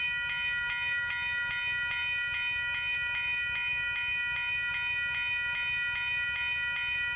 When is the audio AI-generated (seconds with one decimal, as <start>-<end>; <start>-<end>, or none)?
none